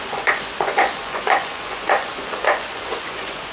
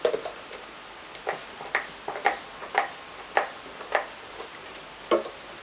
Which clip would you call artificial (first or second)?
first